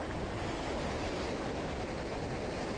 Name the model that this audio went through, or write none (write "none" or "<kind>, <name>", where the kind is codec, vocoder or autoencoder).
none